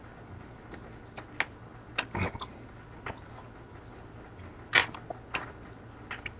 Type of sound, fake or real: real